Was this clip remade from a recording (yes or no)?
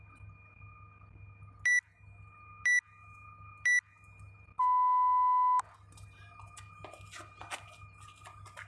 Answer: no